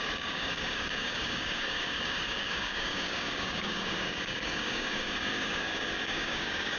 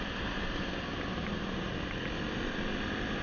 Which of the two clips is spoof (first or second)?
first